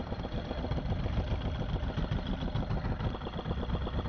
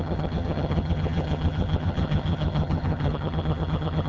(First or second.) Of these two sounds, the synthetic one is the second